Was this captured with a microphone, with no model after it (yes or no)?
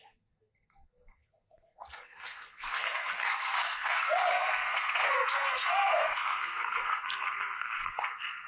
no